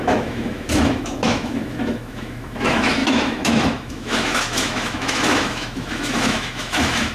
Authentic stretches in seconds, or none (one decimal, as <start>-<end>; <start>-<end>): none